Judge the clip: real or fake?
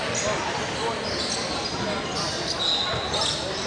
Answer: real